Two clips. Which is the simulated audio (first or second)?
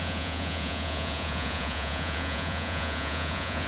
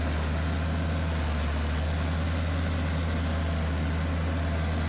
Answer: first